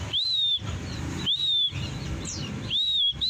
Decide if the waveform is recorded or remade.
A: recorded